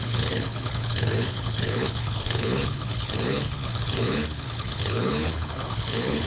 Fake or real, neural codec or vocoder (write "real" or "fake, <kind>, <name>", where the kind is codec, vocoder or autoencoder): fake, codec, HILCodec